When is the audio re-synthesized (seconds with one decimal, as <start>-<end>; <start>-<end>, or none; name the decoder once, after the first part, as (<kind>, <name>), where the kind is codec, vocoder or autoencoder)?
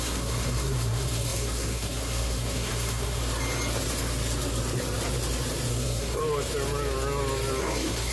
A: 0.0-3.2 (codec, SNAC); 5.7-6.2; 7.6-8.1